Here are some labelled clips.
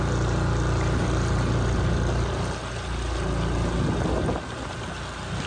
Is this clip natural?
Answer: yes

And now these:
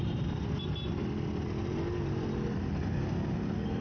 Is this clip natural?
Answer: yes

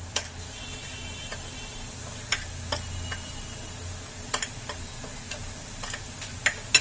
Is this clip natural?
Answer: yes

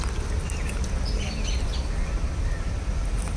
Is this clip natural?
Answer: yes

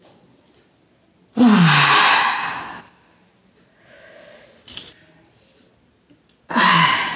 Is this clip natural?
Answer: yes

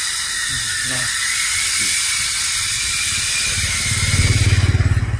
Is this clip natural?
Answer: yes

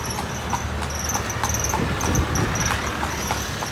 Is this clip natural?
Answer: yes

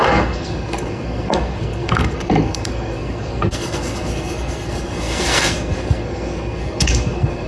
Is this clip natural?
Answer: no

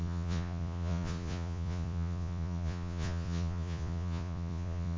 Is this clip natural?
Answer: no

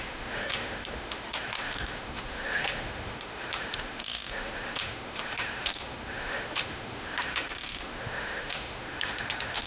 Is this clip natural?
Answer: no